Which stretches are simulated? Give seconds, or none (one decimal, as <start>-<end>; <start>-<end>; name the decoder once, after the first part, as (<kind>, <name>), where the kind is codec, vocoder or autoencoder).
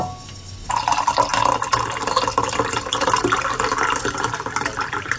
none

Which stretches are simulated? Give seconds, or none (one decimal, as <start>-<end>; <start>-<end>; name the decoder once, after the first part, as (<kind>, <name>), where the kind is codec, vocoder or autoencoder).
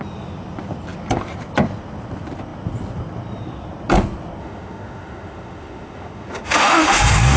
4.4-7.0 (autoencoder, DAC-VAE)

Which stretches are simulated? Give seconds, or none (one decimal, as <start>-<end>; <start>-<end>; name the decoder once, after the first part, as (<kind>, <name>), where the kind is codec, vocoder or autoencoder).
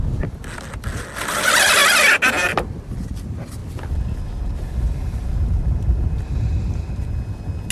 none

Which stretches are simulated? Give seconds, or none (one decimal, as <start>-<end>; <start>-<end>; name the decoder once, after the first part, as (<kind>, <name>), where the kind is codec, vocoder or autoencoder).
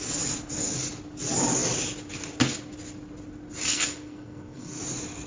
3.7-4.8 (codec, SNAC)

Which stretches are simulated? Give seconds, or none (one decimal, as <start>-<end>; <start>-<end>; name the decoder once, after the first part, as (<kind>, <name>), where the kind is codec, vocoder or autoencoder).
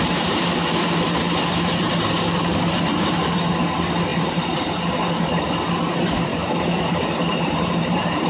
4.1-4.9 (vocoder, BigVGAN v2); 6.3-8.3